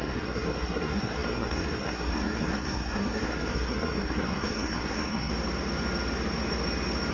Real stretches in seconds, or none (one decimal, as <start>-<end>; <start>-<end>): 5.3-7.1